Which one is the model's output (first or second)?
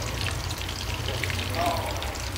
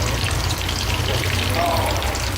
first